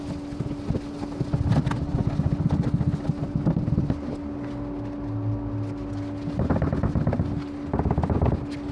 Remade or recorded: recorded